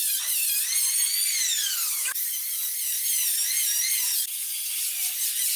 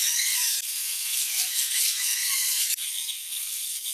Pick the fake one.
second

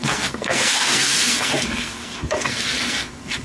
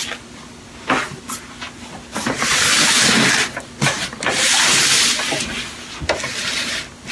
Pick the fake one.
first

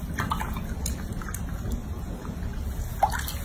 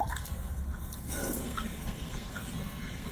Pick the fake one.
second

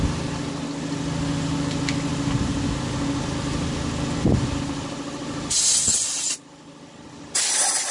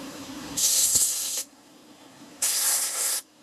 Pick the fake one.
second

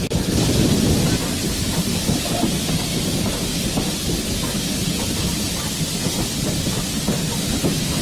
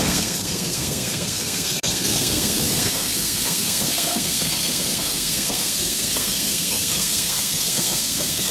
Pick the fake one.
second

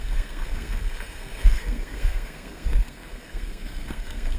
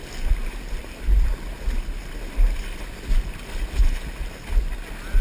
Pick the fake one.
first